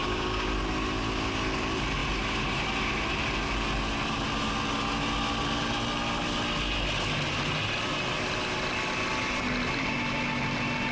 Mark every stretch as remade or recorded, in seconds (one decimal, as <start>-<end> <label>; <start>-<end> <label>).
0.0-0.5 remade; 0.5-10.9 recorded